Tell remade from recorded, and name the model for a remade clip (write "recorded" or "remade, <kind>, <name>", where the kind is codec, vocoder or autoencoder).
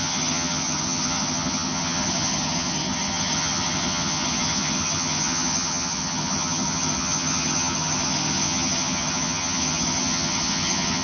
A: remade, vocoder, HiFi-GAN